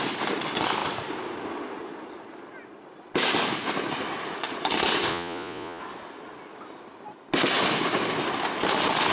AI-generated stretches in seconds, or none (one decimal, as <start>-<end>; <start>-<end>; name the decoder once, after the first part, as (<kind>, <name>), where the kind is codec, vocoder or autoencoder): 5.1-5.8 (vocoder, Vocos)